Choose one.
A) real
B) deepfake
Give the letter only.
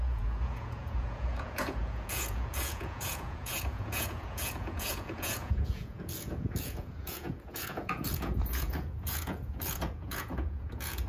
B